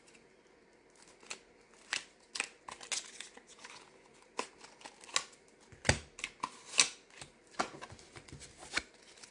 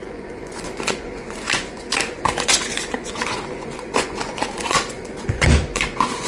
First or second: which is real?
first